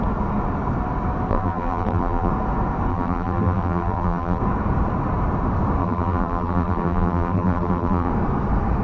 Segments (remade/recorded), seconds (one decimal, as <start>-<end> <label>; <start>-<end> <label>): 0.0-1.3 recorded; 1.3-2.3 remade; 2.3-2.9 recorded; 2.9-4.4 remade; 4.4-5.8 recorded; 5.8-8.1 remade; 8.1-8.8 recorded